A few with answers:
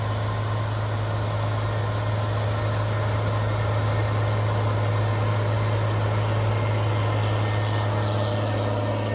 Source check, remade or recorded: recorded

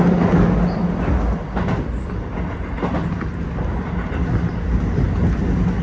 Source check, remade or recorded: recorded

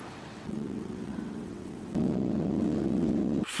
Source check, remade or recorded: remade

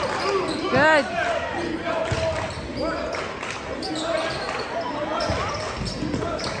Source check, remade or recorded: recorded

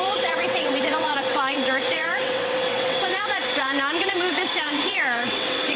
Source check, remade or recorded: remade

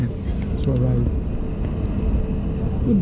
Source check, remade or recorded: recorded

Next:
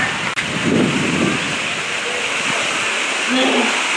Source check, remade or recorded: recorded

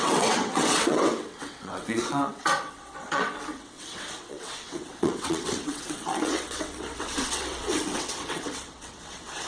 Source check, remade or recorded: remade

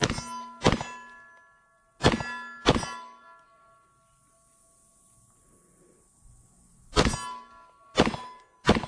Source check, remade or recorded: recorded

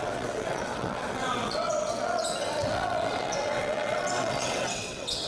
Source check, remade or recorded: remade